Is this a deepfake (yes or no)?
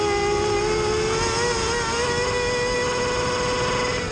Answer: no